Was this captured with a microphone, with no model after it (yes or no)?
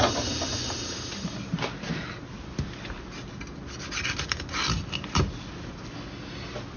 yes